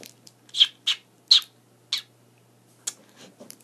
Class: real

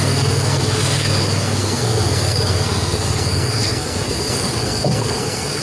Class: fake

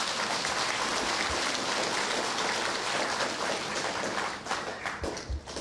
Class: real